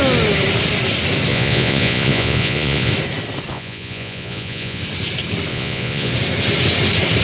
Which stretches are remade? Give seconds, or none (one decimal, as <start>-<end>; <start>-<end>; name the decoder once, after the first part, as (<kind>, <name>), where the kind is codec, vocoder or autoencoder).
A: 1.3-2.9 (vocoder, Vocos); 3.5-4.8; 5.5-6.1